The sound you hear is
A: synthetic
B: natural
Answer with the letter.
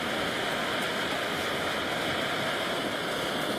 B